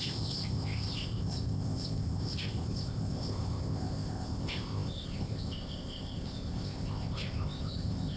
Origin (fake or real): fake